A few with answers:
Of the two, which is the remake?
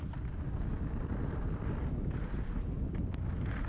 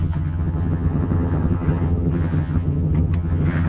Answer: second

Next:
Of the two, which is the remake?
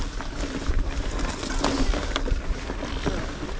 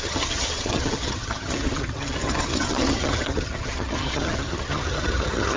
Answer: second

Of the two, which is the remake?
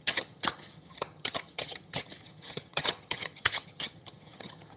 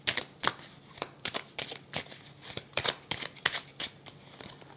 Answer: first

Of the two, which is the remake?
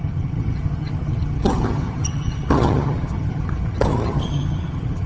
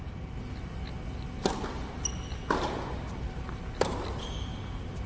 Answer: first